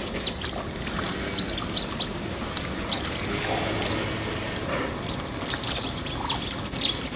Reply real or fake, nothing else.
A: real